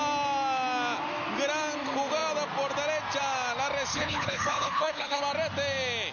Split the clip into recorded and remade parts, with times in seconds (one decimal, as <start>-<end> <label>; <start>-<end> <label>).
0.0-3.9 recorded; 3.9-5.2 remade; 5.2-6.1 recorded